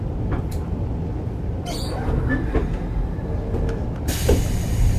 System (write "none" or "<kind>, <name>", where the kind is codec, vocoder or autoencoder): none